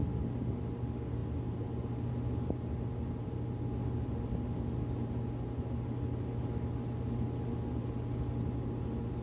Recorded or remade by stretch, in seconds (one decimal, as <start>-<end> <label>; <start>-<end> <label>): 0.0-9.2 recorded